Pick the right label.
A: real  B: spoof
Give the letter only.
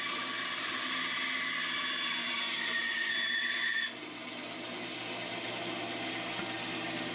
A